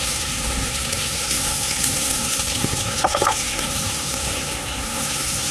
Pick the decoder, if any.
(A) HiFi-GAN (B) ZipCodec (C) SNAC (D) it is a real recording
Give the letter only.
C